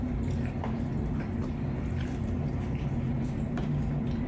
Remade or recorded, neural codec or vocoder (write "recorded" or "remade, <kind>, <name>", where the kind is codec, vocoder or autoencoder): recorded